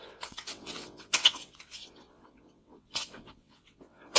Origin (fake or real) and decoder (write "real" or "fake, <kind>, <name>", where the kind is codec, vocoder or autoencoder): fake, vocoder, WaveNeXt